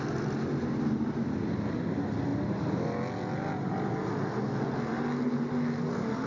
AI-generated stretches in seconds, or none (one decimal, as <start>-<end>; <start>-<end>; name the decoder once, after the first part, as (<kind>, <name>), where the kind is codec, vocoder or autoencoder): none